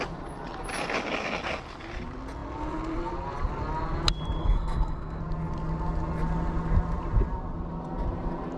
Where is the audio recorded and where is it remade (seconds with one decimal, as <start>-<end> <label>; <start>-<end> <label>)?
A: 0.0-4.4 recorded; 4.4-5.2 remade; 5.2-8.6 recorded